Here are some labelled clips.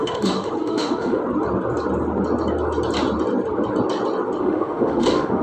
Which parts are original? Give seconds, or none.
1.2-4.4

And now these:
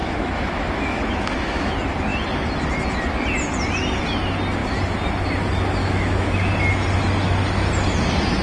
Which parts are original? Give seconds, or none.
1.7-5.8; 6.5-8.4

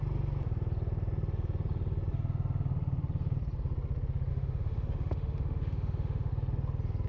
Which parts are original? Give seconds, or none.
0.0-4.3; 6.3-7.1

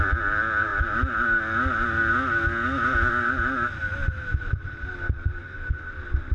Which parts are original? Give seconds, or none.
0.0-6.3

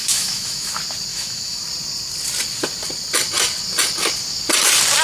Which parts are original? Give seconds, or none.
0.7-1.1; 1.6-5.0

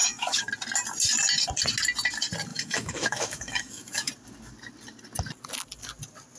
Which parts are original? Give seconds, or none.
0.5-2.5; 4.1-6.4

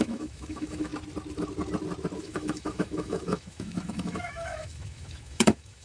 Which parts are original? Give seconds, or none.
0.9-2.2

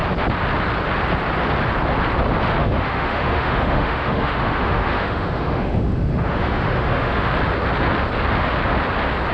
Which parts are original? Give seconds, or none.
0.0-2.6; 7.3-9.3